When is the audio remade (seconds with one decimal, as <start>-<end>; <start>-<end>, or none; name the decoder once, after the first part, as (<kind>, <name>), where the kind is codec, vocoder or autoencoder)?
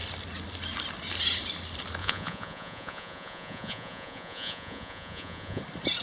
2.0-5.6 (vocoder, Vocos)